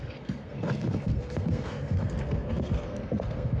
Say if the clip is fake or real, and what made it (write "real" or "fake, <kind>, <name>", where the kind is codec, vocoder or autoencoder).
fake, codec, SNAC